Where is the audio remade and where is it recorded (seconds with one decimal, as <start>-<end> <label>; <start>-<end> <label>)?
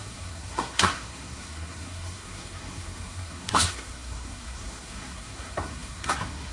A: 0.0-6.5 remade